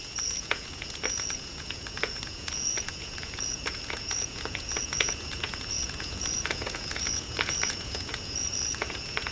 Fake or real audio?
fake